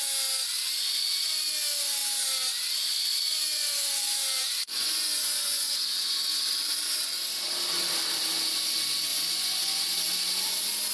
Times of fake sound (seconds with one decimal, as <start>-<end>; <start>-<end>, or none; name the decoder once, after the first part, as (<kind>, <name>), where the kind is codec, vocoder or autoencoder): 3.3-6.4 (vocoder, Vocos); 9.1-9.8